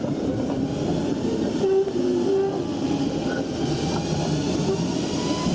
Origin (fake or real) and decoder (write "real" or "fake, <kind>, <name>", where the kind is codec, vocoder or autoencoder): real